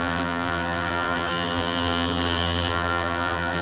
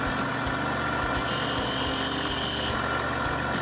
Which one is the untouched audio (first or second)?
second